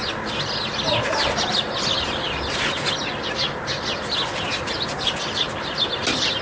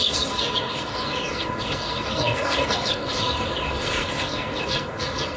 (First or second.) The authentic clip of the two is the first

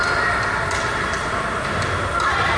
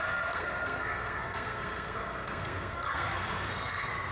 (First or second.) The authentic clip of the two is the first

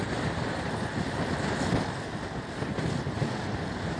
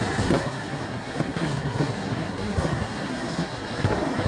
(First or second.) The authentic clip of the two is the first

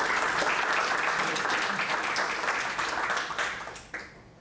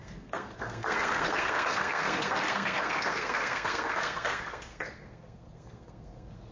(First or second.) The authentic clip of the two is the first